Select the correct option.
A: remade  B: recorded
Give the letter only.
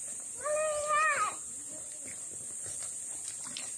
B